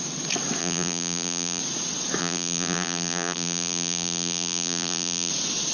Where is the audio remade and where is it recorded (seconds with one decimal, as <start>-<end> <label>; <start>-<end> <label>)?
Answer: 0.0-0.6 recorded; 0.6-1.6 remade; 1.6-2.2 recorded; 2.2-5.3 remade; 5.3-5.7 recorded